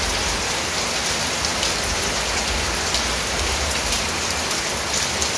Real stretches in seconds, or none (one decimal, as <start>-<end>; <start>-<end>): 0.0-5.4